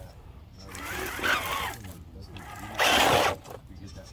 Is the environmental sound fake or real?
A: real